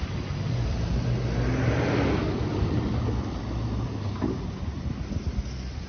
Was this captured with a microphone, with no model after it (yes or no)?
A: yes